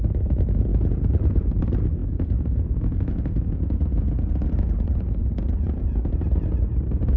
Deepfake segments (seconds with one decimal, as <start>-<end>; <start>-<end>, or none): 0.7-1.6; 2.0-6.1